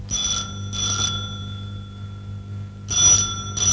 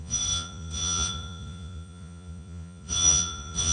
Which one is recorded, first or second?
first